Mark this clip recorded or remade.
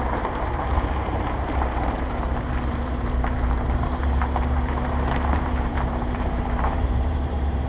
remade